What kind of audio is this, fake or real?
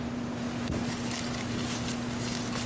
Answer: real